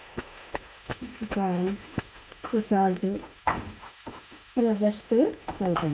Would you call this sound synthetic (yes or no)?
yes